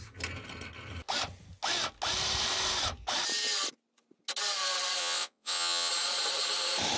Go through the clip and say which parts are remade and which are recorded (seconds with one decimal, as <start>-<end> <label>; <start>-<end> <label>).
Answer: 0.0-5.0 recorded; 5.0-5.9 remade; 5.9-7.0 recorded

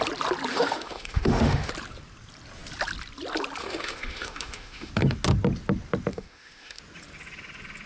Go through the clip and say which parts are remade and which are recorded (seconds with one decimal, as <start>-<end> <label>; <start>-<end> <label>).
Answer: 0.0-0.5 recorded; 0.5-1.7 remade; 1.7-3.6 recorded; 3.6-4.9 remade; 4.9-6.1 recorded; 6.1-6.8 remade; 6.8-7.9 recorded